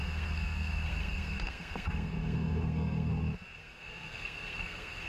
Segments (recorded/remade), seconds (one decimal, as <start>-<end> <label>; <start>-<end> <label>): 0.0-3.1 remade; 3.1-3.6 recorded; 3.6-5.1 remade